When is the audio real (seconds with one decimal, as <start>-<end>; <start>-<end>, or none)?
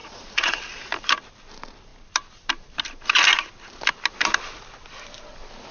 0.6-5.7